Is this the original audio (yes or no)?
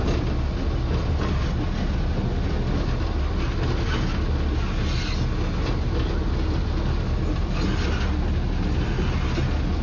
yes